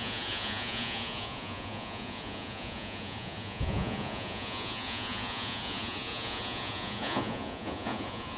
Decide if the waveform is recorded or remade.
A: remade